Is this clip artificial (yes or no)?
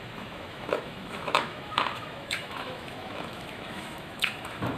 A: yes